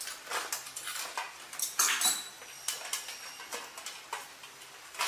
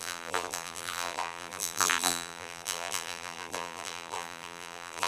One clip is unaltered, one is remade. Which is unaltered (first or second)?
first